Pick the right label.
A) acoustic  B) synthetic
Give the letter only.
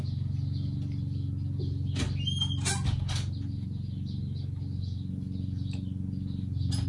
A